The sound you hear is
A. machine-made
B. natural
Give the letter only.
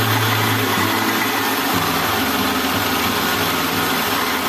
B